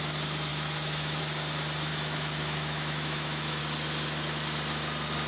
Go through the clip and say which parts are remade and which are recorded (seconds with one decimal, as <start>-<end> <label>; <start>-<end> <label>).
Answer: 0.0-0.5 recorded; 0.5-1.2 remade; 1.2-1.9 recorded; 1.9-3.6 remade; 3.6-5.3 recorded